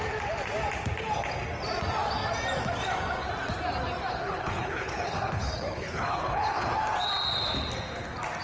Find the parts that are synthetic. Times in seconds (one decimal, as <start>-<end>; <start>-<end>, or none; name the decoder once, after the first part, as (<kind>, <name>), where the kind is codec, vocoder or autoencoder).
4.1-6.7 (codec, HILCodec)